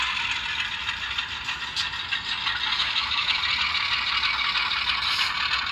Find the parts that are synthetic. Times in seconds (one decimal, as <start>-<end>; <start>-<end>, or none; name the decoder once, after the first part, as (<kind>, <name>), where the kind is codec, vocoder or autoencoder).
2.8-3.4 (autoencoder, DAC-VAE)

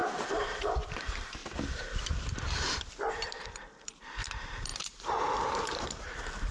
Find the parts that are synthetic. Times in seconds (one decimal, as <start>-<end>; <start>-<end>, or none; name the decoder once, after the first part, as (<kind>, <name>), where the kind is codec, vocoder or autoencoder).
0.6-1.4 (vocoder, BigVGAN v2); 3.1-6.5

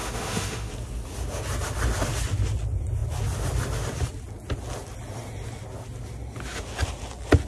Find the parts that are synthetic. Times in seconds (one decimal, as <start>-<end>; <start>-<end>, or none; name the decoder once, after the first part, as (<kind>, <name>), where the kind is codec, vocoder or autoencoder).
0.0-0.7 (autoencoder, DAC-VAE)